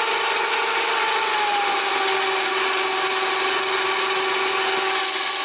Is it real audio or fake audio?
real